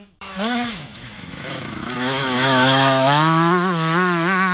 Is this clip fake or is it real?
fake